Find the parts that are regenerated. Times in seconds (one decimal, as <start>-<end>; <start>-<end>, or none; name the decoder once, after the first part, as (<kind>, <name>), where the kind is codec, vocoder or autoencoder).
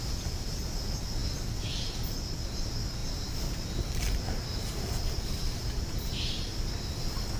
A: 3.0-6.4 (vocoder, BigVGAN v2)